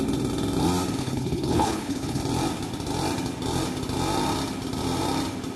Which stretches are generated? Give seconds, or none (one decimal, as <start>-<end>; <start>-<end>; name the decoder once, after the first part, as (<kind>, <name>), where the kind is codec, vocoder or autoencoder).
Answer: 1.0-2.2 (codec, HILCodec)

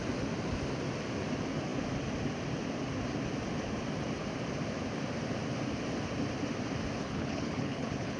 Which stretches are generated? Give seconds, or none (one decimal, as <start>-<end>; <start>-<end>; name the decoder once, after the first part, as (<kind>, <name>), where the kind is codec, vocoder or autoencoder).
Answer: 7.0-8.2 (codec, HILCodec)

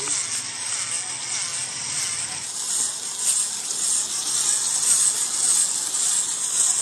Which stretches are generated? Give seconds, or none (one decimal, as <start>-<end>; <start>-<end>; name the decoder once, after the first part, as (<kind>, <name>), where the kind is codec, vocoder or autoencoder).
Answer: none

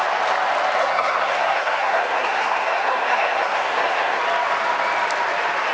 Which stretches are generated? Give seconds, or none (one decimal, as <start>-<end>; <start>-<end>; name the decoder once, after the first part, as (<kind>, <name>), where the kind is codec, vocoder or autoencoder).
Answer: 0.8-4.2 (codec, SNAC)

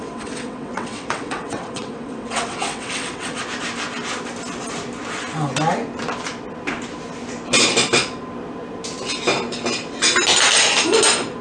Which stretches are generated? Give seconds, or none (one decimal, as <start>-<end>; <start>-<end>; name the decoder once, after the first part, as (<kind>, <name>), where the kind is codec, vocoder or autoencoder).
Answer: 0.0-3.4 (vocoder, WaveNeXt)

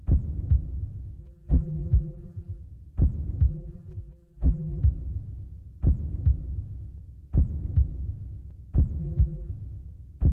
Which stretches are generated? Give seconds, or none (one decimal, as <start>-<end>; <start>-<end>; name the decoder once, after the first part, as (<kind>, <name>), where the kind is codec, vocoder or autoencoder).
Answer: 1.2-2.6 (vocoder, BigVGAN v2); 3.5-4.8; 9.0-9.5